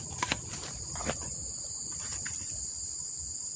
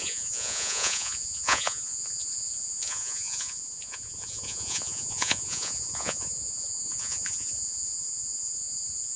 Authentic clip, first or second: first